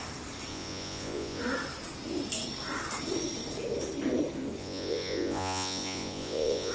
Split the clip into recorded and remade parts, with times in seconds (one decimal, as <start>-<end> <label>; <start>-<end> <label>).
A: 0.0-0.5 recorded; 0.5-1.4 remade; 1.4-4.6 recorded; 4.6-6.7 remade